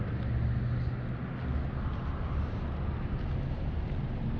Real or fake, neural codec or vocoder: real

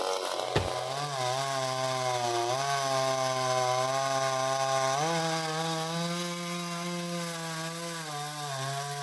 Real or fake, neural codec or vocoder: real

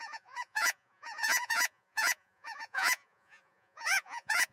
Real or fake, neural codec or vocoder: fake, vocoder, Vocos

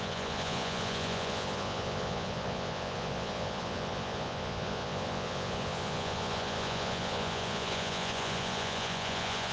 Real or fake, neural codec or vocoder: fake, vocoder, Vocos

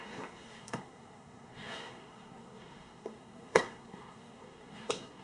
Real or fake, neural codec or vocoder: fake, codec, SNAC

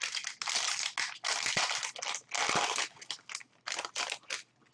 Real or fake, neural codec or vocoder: real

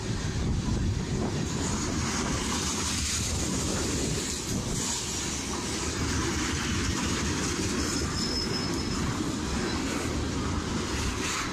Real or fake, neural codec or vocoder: real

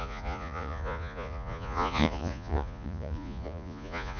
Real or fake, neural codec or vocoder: fake, vocoder, Vocos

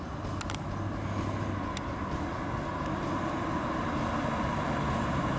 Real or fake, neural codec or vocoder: real